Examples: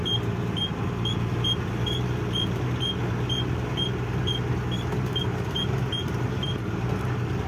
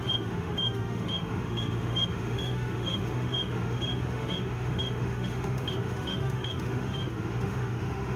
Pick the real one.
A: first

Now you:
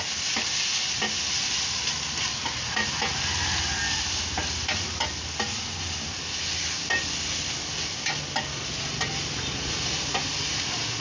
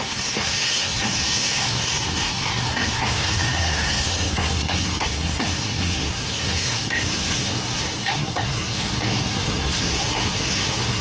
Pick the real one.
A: first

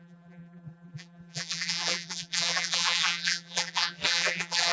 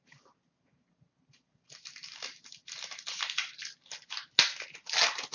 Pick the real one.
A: second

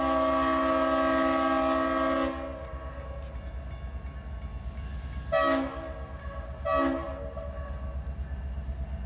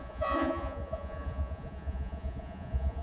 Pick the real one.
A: first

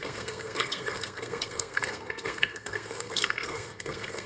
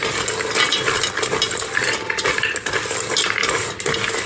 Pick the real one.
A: second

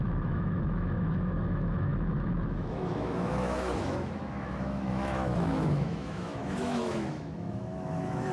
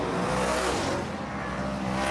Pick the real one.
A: second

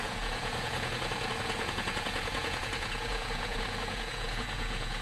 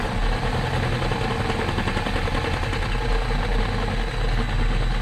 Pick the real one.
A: second